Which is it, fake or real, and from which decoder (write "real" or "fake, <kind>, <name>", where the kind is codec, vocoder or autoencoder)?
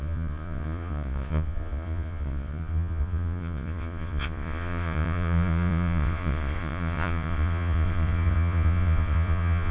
fake, vocoder, Vocos